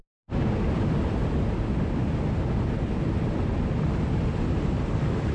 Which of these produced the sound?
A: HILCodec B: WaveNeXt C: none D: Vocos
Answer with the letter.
C